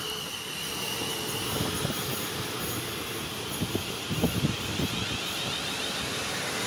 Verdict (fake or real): real